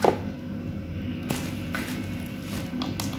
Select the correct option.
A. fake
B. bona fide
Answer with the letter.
B